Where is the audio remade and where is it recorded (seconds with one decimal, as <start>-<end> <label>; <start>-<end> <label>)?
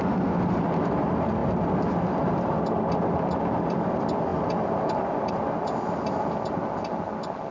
0.0-7.5 recorded